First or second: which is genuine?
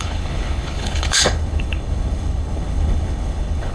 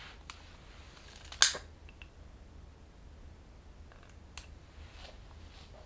second